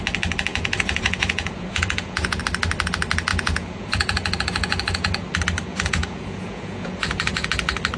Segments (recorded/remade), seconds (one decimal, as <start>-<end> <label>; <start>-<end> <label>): 0.0-0.5 recorded; 0.5-2.4 remade; 2.4-3.3 recorded; 3.3-5.2 remade; 5.2-5.7 recorded; 5.7-7.5 remade; 7.5-8.0 recorded